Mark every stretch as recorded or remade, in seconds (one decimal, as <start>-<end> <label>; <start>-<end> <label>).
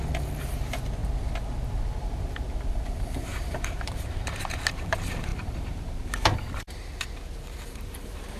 0.0-1.0 remade; 1.0-2.7 recorded; 2.7-8.4 remade